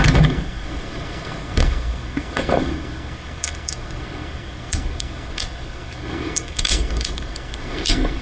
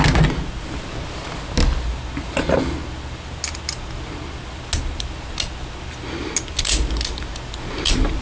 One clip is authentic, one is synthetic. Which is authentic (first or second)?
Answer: second